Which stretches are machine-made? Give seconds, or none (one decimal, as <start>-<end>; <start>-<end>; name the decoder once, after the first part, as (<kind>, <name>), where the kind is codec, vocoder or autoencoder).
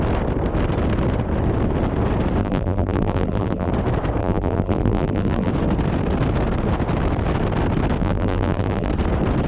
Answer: 2.4-3.7 (vocoder, BigVGAN v2); 4.2-5.5; 8.0-8.9